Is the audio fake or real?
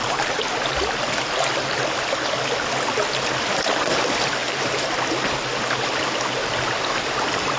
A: real